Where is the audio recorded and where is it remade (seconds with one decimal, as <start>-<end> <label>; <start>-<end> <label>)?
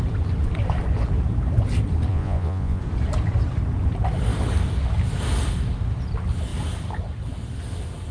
0.0-2.1 recorded; 2.1-2.8 remade; 2.8-8.1 recorded